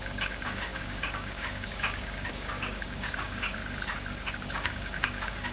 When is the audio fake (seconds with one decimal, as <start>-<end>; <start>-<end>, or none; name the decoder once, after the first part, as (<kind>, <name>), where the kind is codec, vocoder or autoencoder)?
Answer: 0.0-3.6 (codec, DAC); 4.3-5.5